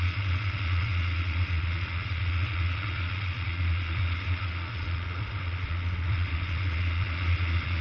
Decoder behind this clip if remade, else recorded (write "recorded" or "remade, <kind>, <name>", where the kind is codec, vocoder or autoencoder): remade, vocoder, Vocos